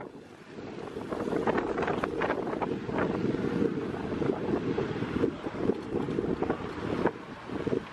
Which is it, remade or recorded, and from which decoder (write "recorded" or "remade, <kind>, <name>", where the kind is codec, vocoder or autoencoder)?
recorded